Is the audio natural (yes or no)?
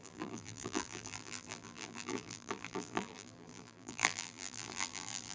no